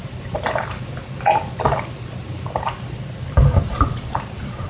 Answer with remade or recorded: recorded